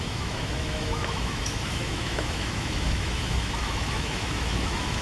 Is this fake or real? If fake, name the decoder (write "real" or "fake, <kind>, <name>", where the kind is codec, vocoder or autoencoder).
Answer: fake, autoencoder, DAC-VAE